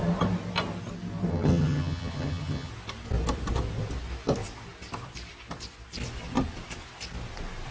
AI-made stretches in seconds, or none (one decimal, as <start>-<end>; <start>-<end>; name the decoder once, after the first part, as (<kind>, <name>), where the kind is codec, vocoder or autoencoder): 1.3-2.7 (vocoder, HiFi-GAN)